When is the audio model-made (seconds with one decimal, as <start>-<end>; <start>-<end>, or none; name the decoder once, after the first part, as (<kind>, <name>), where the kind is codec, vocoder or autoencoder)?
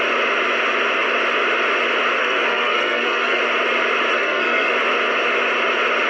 2.2-3.4 (codec, SNAC); 4.1-4.7